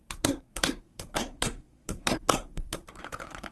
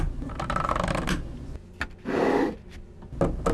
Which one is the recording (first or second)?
second